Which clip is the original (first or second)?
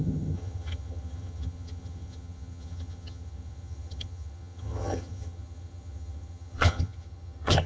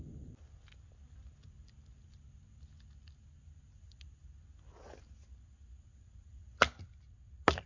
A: second